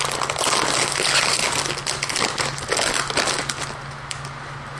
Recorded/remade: recorded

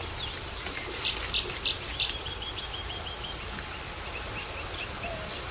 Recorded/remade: recorded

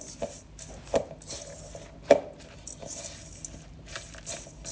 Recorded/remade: recorded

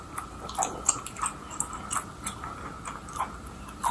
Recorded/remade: recorded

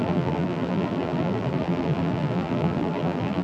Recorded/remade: remade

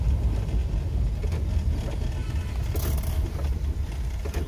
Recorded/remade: recorded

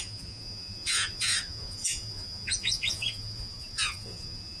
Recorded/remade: remade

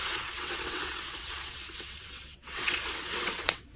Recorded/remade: remade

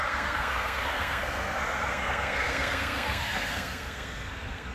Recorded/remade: remade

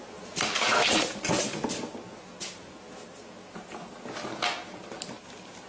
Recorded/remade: recorded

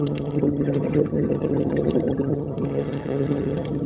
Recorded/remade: remade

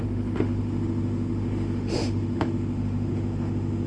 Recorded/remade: remade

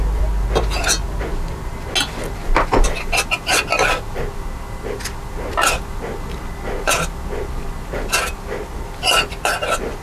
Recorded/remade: recorded